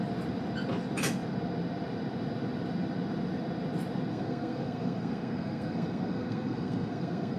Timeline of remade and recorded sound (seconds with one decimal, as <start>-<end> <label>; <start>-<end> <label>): 0.0-4.1 recorded; 4.1-7.4 remade